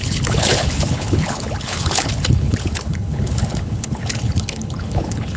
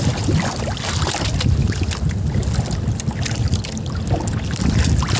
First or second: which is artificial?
first